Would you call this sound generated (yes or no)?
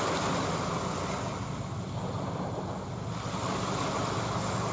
no